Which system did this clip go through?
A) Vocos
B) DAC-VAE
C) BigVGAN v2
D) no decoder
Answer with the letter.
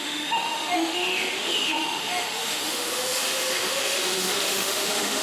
B